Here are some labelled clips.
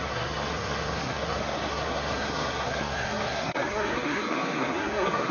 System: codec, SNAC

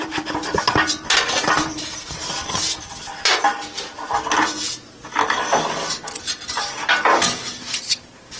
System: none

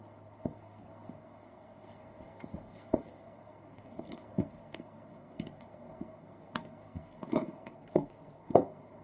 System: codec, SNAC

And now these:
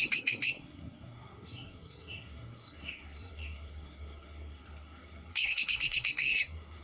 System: codec, SNAC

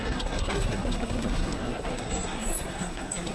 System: codec, SNAC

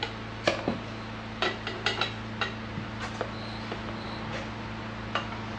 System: none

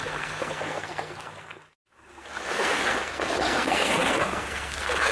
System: codec, SNAC